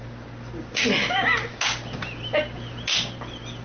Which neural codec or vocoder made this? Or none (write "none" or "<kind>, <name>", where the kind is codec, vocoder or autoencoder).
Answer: none